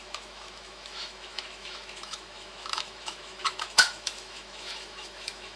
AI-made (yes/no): yes